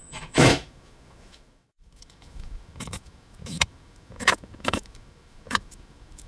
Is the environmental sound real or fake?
fake